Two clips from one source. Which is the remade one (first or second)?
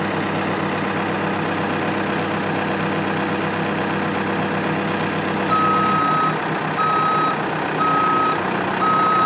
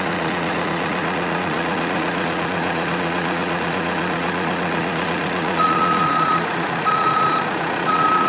second